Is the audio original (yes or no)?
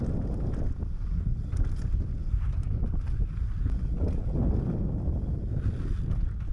yes